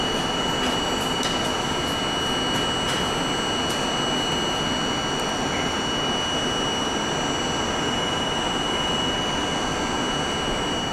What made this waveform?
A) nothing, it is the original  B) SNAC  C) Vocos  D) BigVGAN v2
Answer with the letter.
A